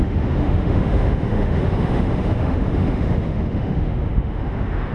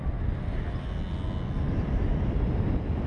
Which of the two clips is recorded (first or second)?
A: second